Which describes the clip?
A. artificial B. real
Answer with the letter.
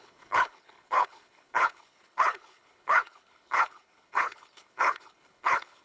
A